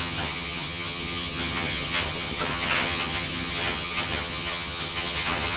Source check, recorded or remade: remade